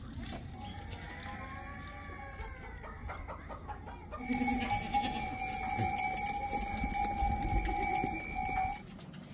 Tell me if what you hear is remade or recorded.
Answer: recorded